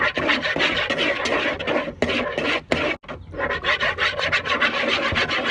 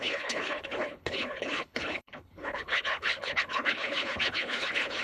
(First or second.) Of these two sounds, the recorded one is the first